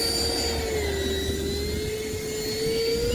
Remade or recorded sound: recorded